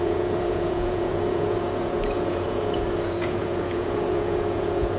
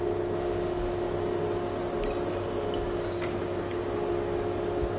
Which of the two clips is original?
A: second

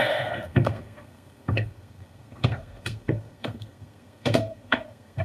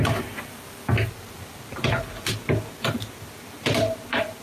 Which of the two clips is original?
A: second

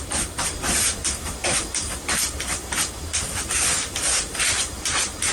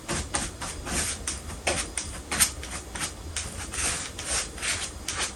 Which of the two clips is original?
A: second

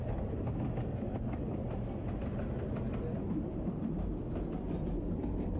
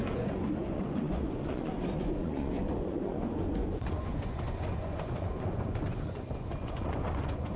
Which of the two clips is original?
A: first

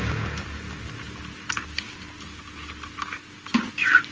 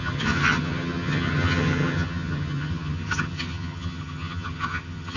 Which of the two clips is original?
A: first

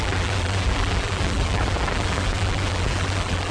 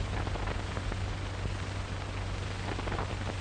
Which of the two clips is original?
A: second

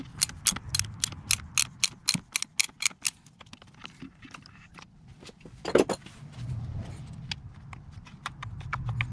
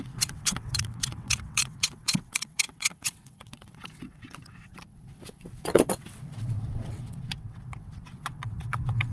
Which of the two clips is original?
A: first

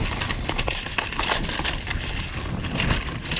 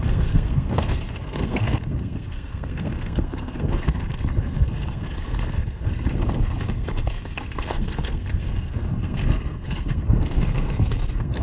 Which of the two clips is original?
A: first